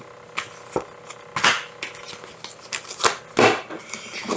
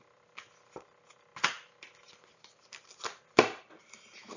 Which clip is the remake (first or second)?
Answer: second